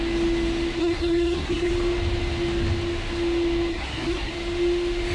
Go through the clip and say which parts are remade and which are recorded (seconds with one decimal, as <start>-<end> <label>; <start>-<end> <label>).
0.0-0.8 recorded; 0.8-1.7 remade; 1.7-3.7 recorded; 3.7-4.3 remade; 4.3-5.1 recorded